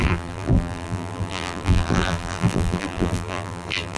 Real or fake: fake